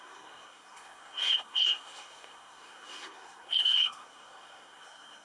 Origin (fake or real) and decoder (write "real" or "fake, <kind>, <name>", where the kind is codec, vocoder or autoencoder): fake, codec, SNAC